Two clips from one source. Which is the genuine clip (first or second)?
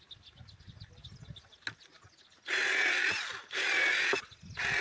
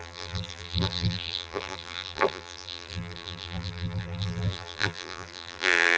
first